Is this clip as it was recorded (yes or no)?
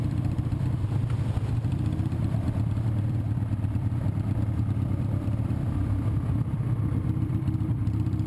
no